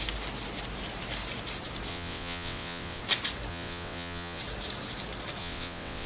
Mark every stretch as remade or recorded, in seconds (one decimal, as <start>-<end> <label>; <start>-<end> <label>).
0.0-1.9 recorded; 1.9-3.0 remade; 3.0-3.5 recorded; 3.5-4.4 remade; 4.4-5.4 recorded; 5.4-6.1 remade